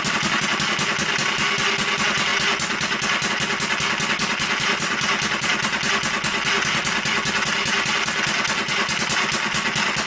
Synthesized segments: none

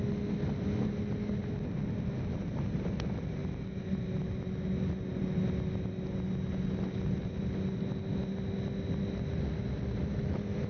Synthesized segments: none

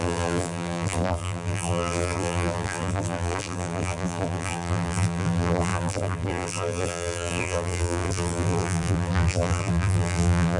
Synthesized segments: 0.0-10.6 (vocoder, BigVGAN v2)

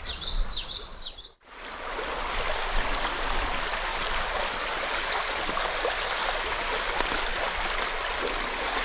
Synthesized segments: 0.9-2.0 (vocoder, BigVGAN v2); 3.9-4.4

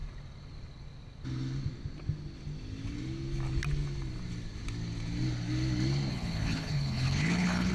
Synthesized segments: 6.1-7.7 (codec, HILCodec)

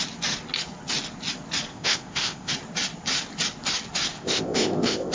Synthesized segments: 1.7-2.5 (codec, ZipCodec); 4.1-5.1

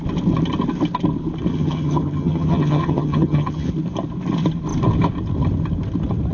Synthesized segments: 1.5-3.7 (vocoder, HiFi-GAN)

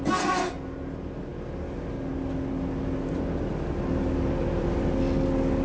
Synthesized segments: none